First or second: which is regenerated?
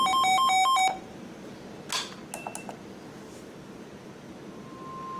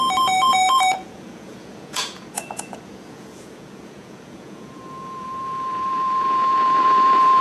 second